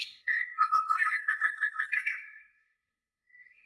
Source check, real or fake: fake